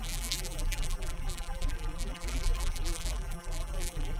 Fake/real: fake